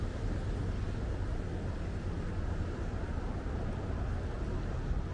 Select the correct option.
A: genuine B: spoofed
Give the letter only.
A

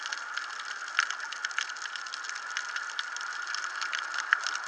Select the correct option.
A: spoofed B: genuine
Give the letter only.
B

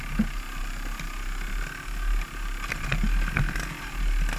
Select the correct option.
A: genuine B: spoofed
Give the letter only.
A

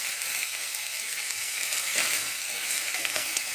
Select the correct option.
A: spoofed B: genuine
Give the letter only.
A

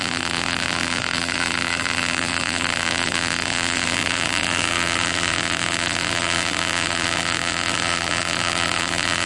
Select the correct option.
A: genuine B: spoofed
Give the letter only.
B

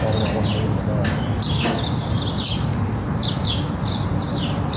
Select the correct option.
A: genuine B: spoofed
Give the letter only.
A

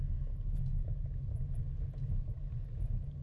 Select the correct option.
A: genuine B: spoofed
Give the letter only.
A